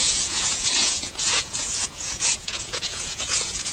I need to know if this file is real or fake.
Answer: fake